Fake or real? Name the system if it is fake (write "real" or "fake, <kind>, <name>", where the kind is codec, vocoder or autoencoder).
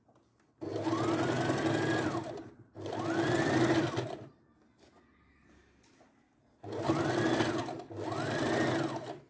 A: real